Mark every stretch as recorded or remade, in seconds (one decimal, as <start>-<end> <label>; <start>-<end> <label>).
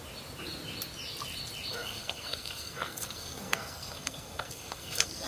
0.0-1.7 recorded; 1.7-5.3 remade